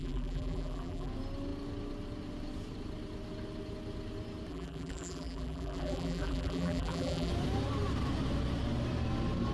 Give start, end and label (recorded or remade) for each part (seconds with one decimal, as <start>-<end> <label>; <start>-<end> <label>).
0.0-1.1 remade; 1.1-4.5 recorded; 4.5-7.3 remade; 7.3-9.5 recorded